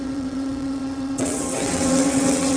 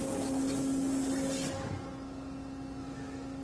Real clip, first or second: second